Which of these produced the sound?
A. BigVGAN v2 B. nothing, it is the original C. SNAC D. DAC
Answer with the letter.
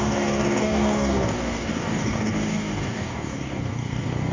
D